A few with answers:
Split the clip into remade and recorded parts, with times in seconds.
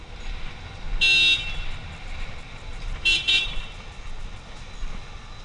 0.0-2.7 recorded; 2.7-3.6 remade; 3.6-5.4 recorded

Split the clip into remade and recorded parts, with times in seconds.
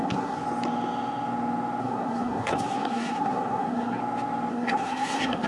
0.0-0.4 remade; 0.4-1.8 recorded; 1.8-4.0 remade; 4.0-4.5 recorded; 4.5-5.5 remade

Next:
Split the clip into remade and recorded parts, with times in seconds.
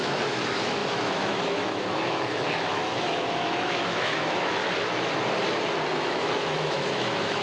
0.0-4.6 remade; 4.6-5.9 recorded; 5.9-7.4 remade